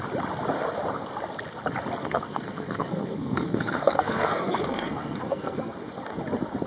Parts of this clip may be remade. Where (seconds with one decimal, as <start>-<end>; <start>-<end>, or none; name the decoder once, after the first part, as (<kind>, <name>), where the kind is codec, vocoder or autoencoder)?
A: 2.0-5.9 (codec, SNAC)